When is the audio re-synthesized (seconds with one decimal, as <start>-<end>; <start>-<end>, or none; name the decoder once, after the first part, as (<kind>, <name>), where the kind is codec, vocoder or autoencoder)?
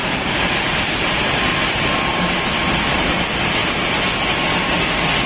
0.0-1.1 (vocoder, BigVGAN v2); 1.5-2.5; 3.6-4.4